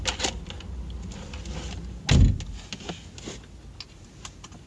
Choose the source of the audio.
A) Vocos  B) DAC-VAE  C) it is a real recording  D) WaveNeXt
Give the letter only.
C